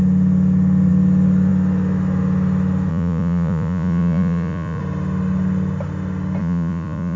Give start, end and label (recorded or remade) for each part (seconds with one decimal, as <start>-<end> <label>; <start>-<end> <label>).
0.0-2.9 recorded; 2.9-4.8 remade; 4.8-6.4 recorded; 6.4-7.2 remade